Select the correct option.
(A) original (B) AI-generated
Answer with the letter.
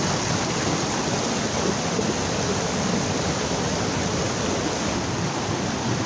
A